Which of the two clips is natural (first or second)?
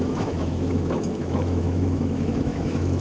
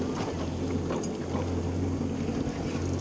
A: second